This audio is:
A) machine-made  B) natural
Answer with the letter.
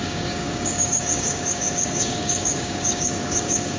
A